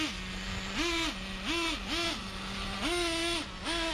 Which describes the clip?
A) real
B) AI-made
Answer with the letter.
A